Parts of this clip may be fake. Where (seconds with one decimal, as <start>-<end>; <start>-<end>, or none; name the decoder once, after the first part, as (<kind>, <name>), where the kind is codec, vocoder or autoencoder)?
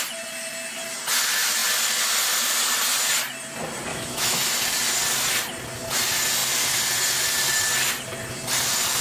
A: 3.9-4.4 (autoencoder, DAC-VAE)